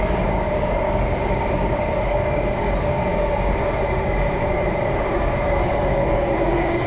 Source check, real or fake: fake